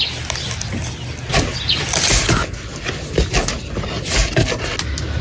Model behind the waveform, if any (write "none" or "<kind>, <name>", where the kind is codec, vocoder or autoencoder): none